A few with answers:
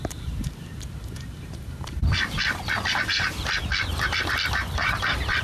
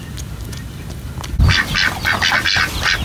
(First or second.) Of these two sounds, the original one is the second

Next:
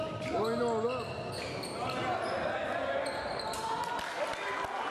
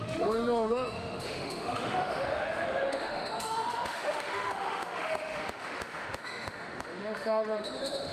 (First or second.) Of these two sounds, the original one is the first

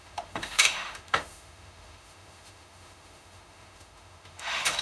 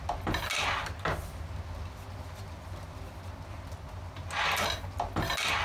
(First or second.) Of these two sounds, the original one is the second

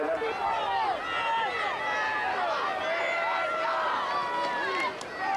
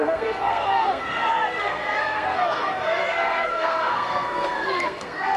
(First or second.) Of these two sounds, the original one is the first